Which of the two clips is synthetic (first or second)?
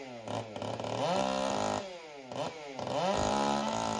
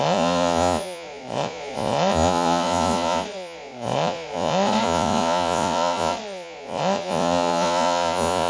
second